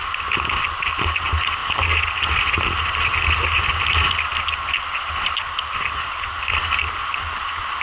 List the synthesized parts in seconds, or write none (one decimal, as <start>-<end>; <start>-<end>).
none